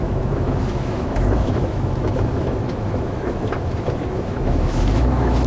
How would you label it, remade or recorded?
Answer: remade